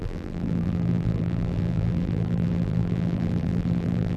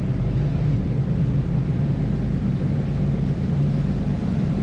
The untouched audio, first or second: second